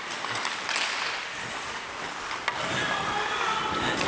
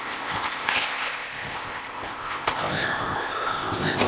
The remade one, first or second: second